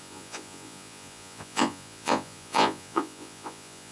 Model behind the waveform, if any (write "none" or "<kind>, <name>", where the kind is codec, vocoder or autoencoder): vocoder, Vocos